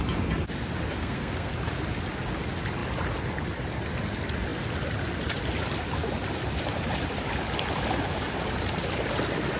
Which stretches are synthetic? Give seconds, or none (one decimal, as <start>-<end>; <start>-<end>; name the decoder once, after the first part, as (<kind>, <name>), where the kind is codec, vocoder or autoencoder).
1.0-1.5 (codec, SNAC)